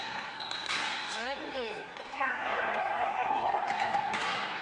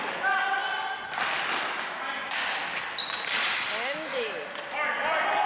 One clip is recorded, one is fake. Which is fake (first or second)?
first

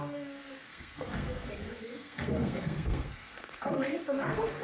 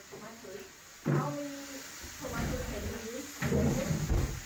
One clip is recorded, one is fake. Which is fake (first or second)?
first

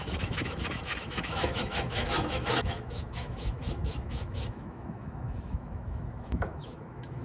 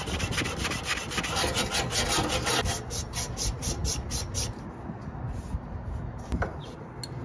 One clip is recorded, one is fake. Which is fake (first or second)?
first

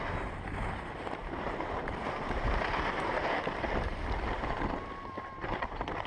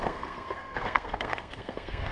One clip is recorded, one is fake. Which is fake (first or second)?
second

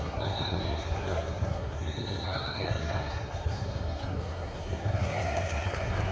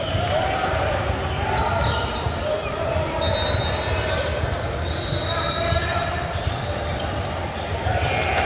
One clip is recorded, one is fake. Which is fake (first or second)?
first